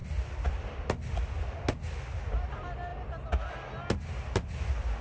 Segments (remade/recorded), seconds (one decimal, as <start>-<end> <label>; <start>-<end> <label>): 0.0-5.0 recorded